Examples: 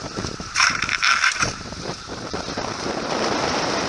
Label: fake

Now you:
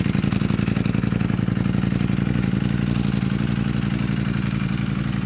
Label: real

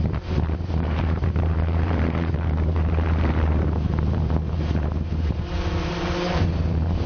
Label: fake